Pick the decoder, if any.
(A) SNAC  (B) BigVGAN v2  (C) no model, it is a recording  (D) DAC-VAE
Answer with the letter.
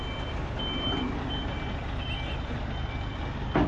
C